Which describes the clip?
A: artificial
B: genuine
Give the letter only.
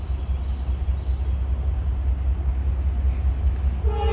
B